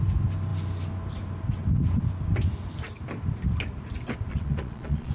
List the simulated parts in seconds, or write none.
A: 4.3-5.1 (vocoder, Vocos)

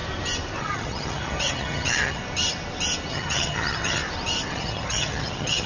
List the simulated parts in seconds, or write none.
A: 0.6-2.2 (vocoder, HiFi-GAN); 3.1-4.0; 4.5-5.7

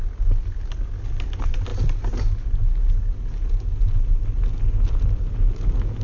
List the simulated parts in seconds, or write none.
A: none

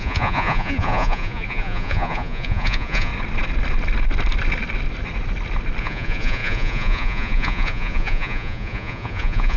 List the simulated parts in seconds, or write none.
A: 0.0-3.1 (vocoder, Vocos); 5.8-9.6